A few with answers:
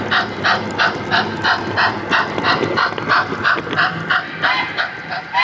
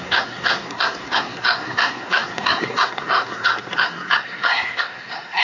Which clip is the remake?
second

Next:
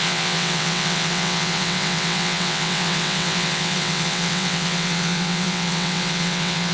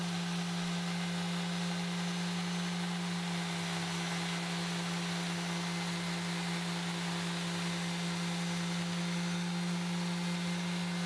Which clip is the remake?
first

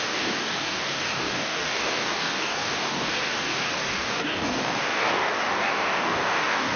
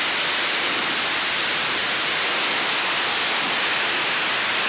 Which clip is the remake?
first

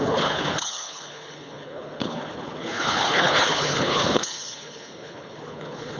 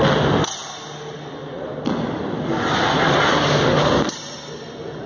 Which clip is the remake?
first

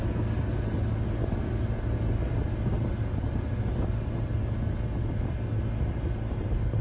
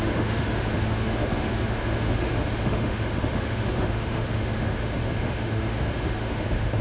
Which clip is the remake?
second